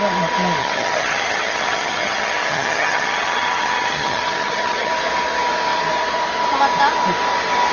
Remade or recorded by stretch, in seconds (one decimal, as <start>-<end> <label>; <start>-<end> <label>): 0.0-0.6 recorded; 0.6-4.9 remade; 4.9-7.7 recorded